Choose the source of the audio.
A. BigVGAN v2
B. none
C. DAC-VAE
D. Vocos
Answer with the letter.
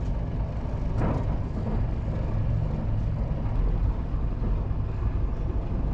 B